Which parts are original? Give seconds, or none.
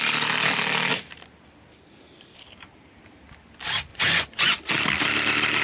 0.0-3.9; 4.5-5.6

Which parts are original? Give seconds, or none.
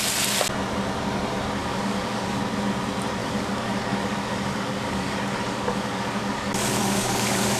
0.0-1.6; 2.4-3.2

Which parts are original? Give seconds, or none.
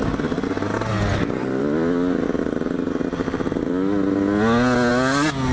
0.0-5.5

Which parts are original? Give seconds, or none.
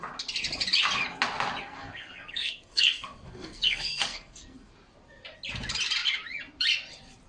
0.0-1.6; 4.7-7.3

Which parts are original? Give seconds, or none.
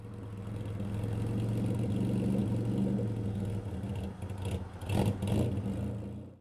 0.0-6.4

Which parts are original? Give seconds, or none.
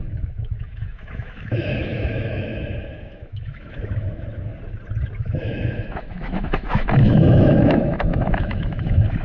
4.5-5.2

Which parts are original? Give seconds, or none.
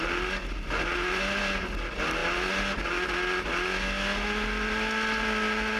0.0-5.8